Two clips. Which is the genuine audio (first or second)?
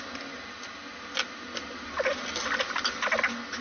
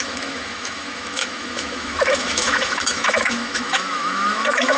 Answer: first